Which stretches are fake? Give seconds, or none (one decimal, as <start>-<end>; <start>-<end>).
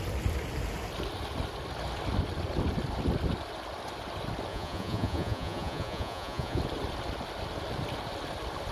4.5-6.6